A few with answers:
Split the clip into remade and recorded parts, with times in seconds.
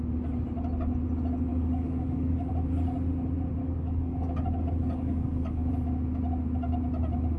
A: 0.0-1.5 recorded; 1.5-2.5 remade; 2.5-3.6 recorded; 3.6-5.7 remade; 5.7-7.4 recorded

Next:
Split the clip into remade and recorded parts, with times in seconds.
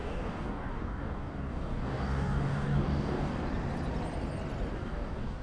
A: 0.0-3.3 remade; 3.3-4.7 recorded; 4.7-5.4 remade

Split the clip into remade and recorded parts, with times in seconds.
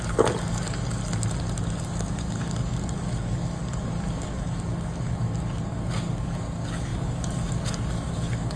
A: 0.0-1.0 remade; 1.0-1.8 recorded; 1.8-8.6 remade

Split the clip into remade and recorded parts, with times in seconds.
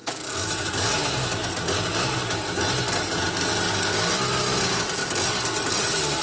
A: 0.0-6.2 recorded